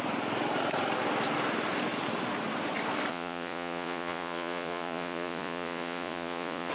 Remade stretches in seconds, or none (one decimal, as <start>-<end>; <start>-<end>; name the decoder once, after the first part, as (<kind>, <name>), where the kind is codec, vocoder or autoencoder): 3.1-6.7 (vocoder, Vocos)